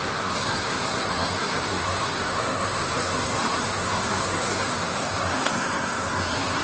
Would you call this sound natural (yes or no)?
no